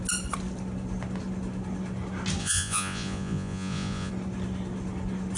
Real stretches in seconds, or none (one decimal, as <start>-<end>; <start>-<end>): 0.0-2.4; 4.1-5.4